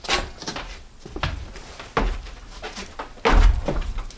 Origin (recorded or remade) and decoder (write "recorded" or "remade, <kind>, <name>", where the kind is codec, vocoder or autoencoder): recorded